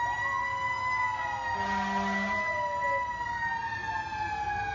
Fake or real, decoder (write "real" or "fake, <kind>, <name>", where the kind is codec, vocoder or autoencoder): real